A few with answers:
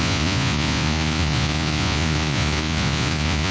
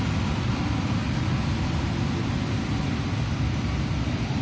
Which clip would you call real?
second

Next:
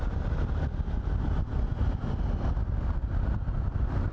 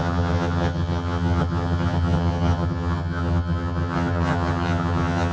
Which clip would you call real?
first